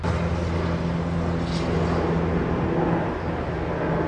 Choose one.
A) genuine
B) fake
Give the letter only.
A